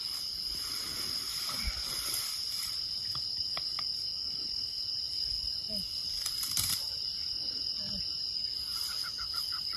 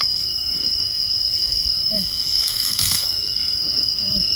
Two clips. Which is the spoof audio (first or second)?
second